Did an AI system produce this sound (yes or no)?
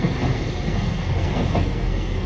yes